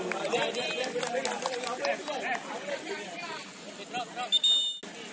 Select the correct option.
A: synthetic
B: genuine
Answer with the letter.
B